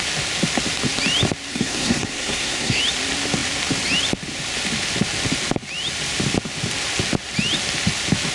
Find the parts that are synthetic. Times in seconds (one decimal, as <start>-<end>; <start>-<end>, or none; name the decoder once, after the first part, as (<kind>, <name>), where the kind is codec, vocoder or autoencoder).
1.5-2.8 (codec, SNAC)